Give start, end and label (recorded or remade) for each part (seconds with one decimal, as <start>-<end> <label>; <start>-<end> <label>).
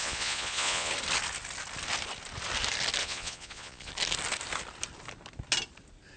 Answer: 0.0-0.9 remade; 0.9-3.0 recorded; 3.0-3.9 remade; 3.9-6.2 recorded